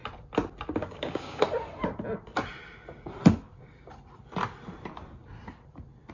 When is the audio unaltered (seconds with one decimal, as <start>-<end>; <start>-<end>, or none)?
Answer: 0.0-0.8; 1.4-6.1

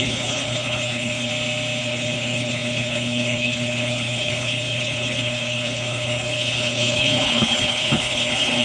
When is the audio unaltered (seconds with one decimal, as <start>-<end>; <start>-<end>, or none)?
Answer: 1.3-1.8

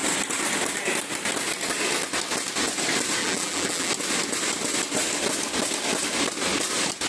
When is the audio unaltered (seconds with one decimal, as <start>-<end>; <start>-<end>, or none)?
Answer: 0.0-3.2; 3.9-7.1